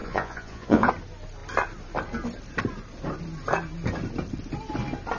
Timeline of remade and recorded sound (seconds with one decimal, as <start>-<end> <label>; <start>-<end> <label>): 0.0-0.9 remade; 0.9-5.2 recorded